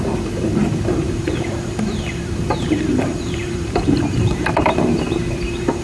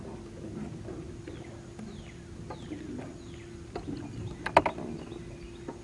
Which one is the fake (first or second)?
first